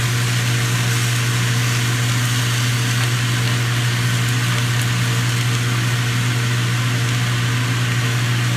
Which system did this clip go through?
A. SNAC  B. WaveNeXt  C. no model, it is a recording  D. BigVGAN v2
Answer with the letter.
C